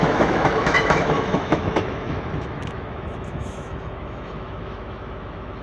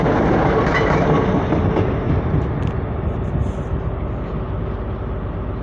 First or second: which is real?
second